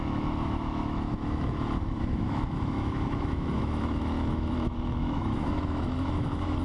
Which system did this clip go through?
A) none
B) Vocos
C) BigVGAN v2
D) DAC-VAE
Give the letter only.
D